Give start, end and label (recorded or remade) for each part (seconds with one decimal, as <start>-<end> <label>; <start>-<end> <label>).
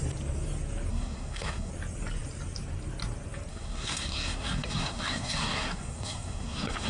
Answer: 0.0-0.9 recorded; 0.9-1.7 remade; 1.7-3.5 recorded; 3.5-6.9 remade